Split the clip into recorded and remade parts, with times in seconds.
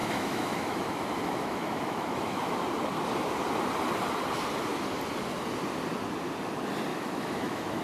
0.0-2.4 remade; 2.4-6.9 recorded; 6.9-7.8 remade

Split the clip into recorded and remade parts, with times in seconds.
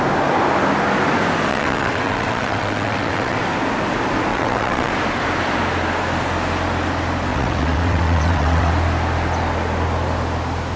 0.0-1.5 recorded; 1.5-3.4 remade; 3.4-4.3 recorded; 4.3-4.9 remade; 4.9-7.3 recorded; 7.3-8.7 remade; 8.7-10.8 recorded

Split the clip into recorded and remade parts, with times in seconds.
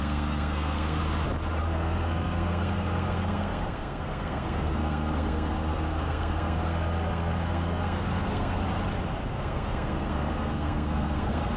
0.0-1.0 remade; 1.0-1.6 recorded; 1.6-8.6 remade; 8.6-9.3 recorded; 9.3-11.6 remade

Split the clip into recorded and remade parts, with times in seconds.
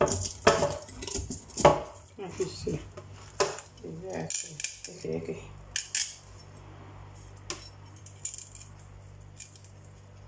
0.0-1.7 recorded; 1.7-2.3 remade; 2.3-2.7 recorded; 2.7-3.7 remade; 3.7-10.3 recorded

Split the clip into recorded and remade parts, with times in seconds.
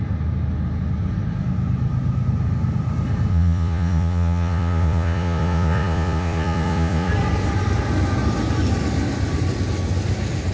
0.0-3.3 recorded; 3.3-7.1 remade; 7.1-10.5 recorded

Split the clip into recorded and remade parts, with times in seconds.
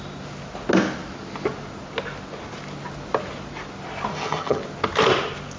0.0-4.1 recorded; 4.1-4.6 remade; 4.6-5.6 recorded